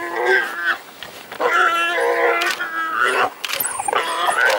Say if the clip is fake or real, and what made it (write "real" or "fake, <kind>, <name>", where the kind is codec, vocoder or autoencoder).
real